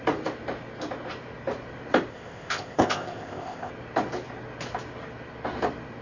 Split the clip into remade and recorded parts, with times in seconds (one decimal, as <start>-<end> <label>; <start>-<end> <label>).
0.0-2.1 recorded; 2.1-3.7 remade; 3.7-6.0 recorded